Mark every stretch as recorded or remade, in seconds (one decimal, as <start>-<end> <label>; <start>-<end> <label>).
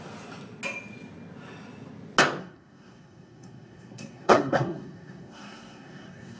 0.0-2.4 recorded; 2.4-6.4 remade